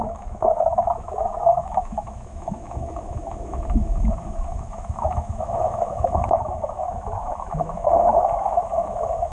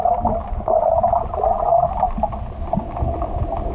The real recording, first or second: second